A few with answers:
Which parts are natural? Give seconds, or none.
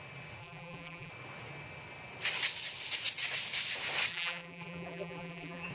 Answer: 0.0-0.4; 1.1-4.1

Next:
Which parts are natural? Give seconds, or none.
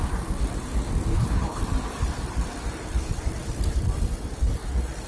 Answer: 0.0-1.1; 1.6-5.1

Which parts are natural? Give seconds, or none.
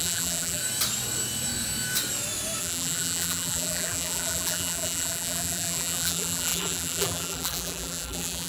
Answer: 0.6-2.6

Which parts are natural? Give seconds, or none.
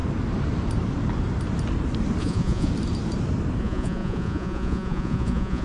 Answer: 0.0-2.2; 2.7-3.6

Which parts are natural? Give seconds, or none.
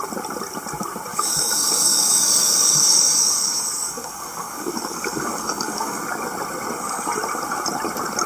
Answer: 0.0-1.1; 6.0-8.3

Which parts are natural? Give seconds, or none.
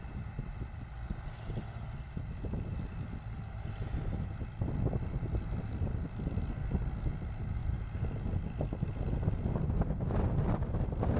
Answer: 0.0-11.2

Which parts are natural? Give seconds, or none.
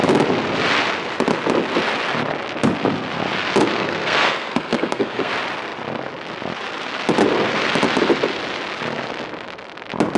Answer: 0.0-3.6; 5.3-10.2